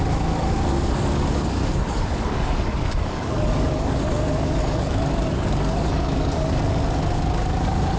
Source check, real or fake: fake